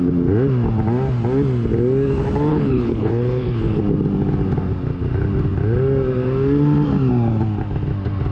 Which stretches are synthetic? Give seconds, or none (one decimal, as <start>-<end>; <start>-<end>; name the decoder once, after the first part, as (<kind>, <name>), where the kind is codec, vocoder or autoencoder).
2.5-3.8 (codec, HILCodec)